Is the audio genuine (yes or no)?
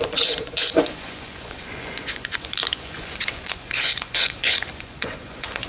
no